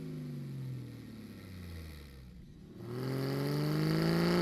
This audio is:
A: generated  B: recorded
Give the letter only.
B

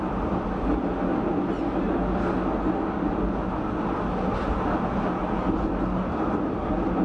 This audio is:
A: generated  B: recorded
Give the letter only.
B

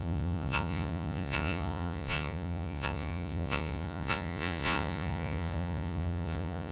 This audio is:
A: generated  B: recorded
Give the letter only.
A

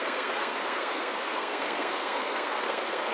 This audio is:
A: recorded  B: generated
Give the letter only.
B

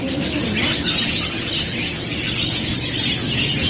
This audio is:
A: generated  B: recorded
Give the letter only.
B